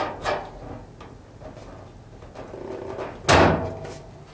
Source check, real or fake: real